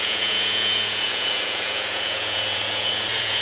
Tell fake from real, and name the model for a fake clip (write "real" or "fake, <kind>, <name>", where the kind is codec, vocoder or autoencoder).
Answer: fake, vocoder, Vocos